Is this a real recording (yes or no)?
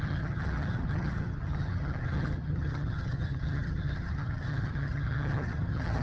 no